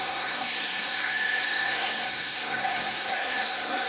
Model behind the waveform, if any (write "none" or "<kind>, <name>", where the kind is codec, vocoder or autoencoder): codec, SNAC